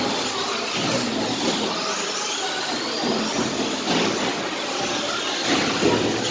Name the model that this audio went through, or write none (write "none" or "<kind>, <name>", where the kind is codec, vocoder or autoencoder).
none